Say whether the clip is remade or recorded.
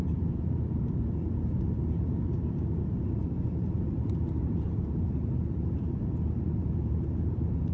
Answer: remade